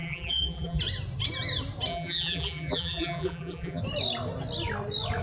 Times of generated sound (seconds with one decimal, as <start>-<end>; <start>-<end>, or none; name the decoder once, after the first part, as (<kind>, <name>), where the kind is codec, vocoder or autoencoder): 0.0-0.8 (vocoder, BigVGAN v2); 1.9-3.8